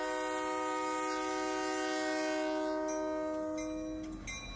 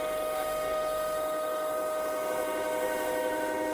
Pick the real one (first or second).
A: first